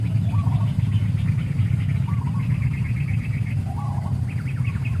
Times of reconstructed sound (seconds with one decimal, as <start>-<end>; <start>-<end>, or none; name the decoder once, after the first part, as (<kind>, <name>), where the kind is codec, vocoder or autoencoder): 0.0-0.4 (vocoder, BigVGAN v2); 1.3-1.9; 3.5-5.0